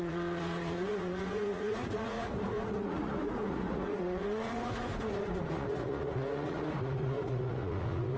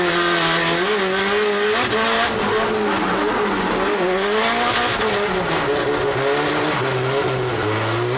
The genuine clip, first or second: second